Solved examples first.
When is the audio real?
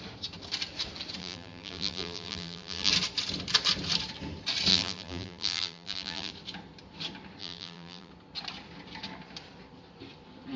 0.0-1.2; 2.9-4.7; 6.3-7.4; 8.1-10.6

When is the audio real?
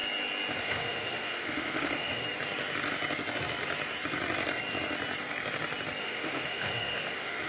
0.0-0.6; 2.2-6.0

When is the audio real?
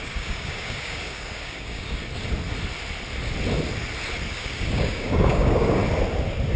2.0-4.3; 5.8-6.6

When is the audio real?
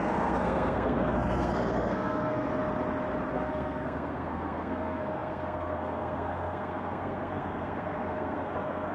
2.5-3.3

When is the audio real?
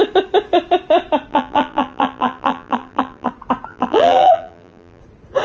0.0-1.3; 3.3-3.7; 5.0-5.4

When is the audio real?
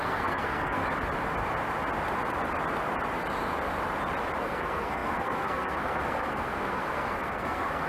0.8-4.4